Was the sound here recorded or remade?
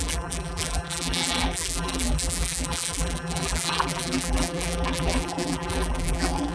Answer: remade